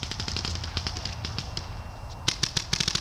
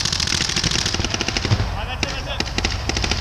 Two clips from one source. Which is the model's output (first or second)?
first